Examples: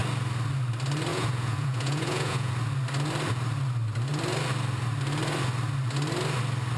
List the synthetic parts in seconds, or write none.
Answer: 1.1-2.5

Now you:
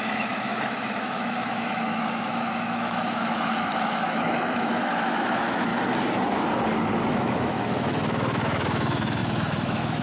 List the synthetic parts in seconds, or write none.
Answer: 0.0-5.7; 7.1-10.0

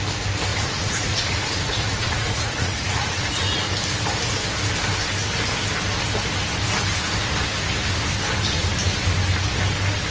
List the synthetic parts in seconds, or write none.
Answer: 0.5-3.7

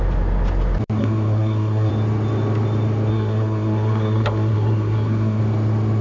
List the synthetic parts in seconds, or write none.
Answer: 1.0-1.9; 3.1-5.4

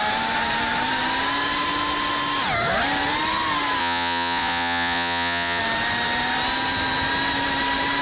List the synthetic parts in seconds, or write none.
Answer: 3.8-5.6

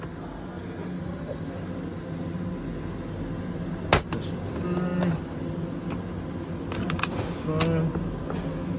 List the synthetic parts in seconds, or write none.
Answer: none